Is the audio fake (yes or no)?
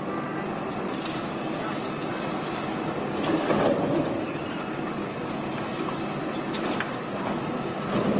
yes